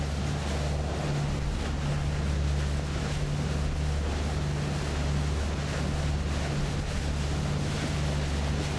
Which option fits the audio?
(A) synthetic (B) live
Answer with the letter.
B